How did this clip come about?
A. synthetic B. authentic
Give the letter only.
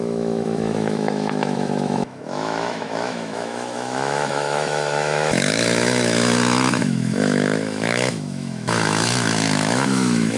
A